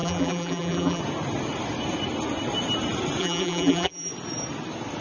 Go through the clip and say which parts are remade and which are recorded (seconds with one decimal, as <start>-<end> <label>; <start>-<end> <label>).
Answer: 0.0-1.0 remade; 1.0-3.2 recorded; 3.2-4.1 remade; 4.1-5.0 recorded